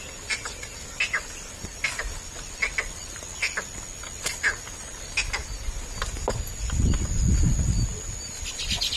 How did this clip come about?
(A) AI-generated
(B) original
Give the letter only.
B